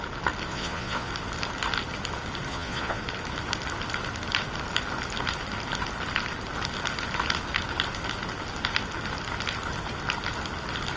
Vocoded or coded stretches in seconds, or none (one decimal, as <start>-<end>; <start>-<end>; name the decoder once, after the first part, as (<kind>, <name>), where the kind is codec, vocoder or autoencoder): 0.5-1.1 (vocoder, Vocos); 2.5-3.0